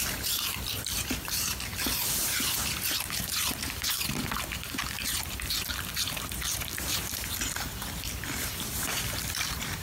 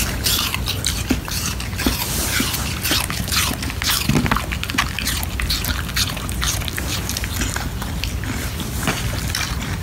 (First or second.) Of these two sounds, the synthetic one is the first